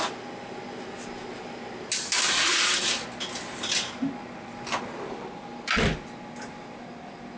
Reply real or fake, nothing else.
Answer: real